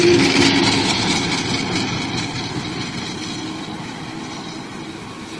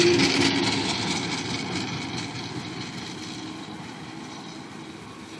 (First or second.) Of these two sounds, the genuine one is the second